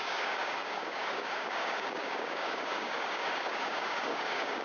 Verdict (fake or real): fake